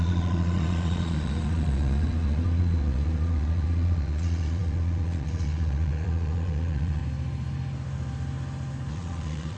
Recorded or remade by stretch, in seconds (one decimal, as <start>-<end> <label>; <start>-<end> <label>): 0.0-7.0 remade; 7.0-8.9 recorded; 8.9-9.6 remade